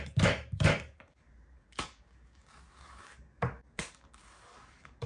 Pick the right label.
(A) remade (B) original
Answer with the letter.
A